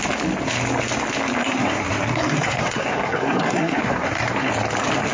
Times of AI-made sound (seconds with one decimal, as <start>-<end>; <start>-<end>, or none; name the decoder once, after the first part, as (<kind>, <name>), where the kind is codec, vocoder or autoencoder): 1.4-4.5 (codec, SNAC)